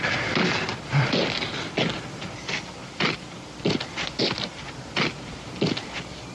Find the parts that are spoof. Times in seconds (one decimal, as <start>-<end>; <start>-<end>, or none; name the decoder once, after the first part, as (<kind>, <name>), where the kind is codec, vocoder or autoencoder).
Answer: none